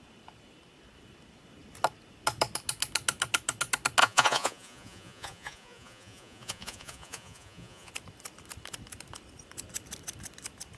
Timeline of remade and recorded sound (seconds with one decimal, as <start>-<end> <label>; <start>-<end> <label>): 0.0-4.0 recorded; 4.0-7.9 remade; 7.9-10.8 recorded